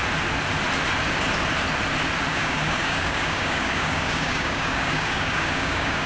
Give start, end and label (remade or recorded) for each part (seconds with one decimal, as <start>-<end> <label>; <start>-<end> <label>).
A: 0.0-2.3 recorded; 2.3-6.1 remade